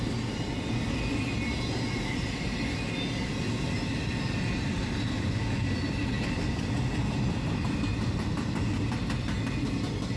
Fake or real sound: real